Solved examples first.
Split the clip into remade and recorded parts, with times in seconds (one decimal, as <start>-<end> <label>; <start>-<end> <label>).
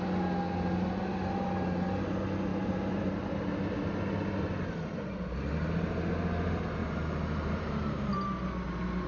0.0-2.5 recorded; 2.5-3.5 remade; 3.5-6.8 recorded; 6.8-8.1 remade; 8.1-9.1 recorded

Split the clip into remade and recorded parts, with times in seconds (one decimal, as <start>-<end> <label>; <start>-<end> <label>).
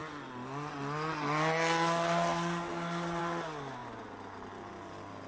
0.0-5.3 recorded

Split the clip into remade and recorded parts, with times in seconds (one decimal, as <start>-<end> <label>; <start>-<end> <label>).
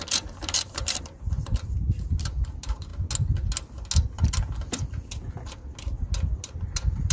0.0-2.9 remade; 2.9-6.3 recorded; 6.3-7.1 remade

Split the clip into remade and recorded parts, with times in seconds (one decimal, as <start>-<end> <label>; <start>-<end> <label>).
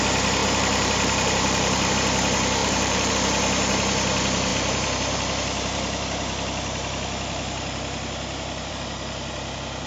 0.0-0.4 recorded; 0.4-1.9 remade; 1.9-2.6 recorded; 2.6-3.1 remade; 3.1-9.9 recorded